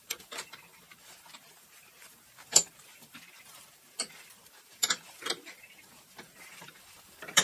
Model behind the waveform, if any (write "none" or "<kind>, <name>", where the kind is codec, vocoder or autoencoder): vocoder, BigVGAN v2